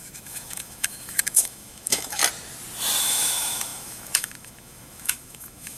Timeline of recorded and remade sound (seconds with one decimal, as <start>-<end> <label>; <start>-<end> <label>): 0.0-2.2 remade; 2.2-3.0 recorded; 3.0-5.8 remade